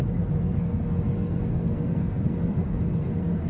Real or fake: fake